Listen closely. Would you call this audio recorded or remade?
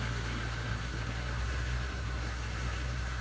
remade